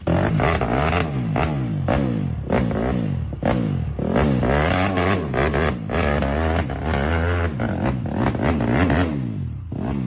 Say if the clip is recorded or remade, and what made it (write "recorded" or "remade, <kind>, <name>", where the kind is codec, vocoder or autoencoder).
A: recorded